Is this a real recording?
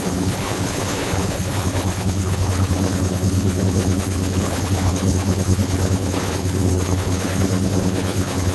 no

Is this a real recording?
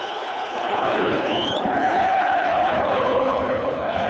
no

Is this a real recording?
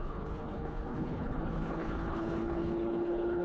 no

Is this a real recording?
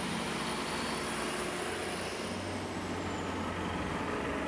yes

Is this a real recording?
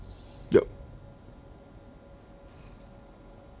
yes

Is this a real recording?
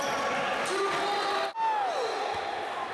yes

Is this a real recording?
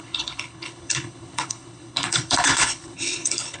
no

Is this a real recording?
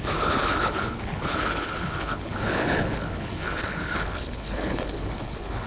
no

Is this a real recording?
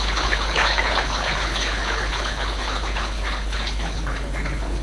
no